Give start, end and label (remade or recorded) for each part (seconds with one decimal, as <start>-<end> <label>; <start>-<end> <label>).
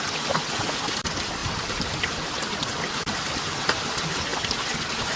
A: 0.0-1.4 recorded; 1.4-3.2 remade; 3.2-5.2 recorded